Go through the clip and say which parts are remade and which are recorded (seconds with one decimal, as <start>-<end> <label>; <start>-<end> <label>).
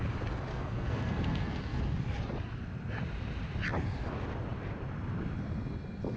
0.0-0.5 recorded; 0.5-1.8 remade; 1.8-6.2 recorded